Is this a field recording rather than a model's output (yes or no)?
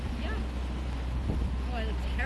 yes